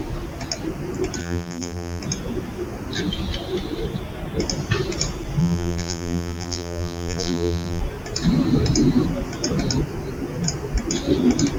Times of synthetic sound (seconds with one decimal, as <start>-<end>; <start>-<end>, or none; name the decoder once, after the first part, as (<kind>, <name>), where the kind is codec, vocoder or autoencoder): 1.2-2.0 (vocoder, BigVGAN v2); 5.4-7.8